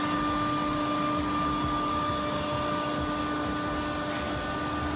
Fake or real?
real